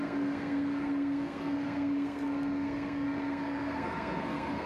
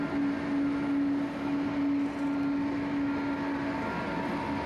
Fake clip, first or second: first